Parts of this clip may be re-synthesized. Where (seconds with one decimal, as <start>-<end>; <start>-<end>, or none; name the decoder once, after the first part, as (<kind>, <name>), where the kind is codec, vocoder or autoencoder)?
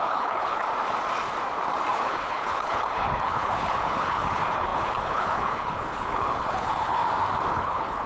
0.0-0.6 (codec, HILCodec); 1.9-7.0; 7.5-8.1